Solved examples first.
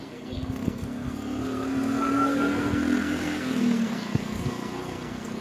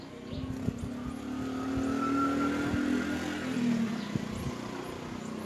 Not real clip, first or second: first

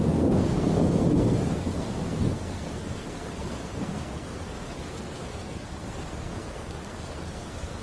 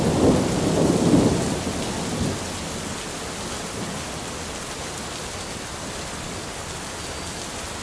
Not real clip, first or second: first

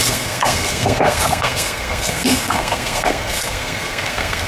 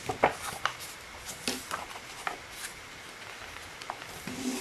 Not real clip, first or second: first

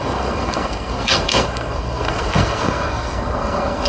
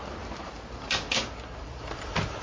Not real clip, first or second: first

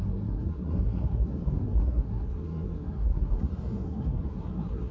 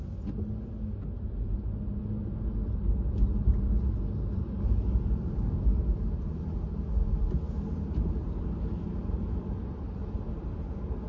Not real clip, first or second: first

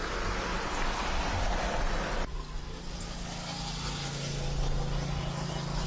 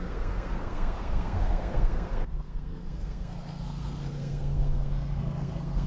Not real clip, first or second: second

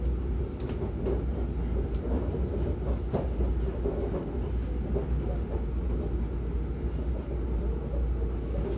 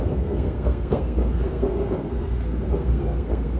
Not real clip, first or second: second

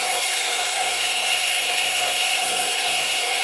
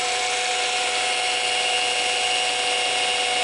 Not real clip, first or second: first